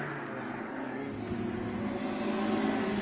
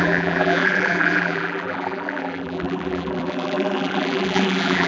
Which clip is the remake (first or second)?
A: second